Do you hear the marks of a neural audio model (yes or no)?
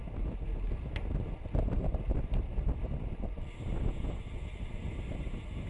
no